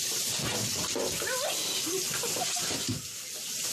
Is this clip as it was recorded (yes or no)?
yes